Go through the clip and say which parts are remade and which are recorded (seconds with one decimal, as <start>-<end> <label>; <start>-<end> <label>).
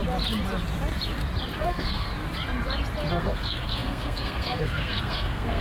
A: 0.0-1.6 recorded; 1.6-2.1 remade; 2.1-3.1 recorded; 3.1-5.6 remade